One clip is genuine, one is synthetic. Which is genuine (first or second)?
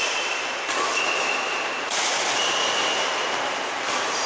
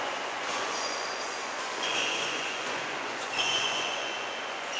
first